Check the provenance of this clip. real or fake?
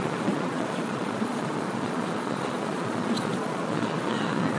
fake